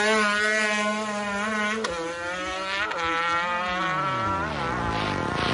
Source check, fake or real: real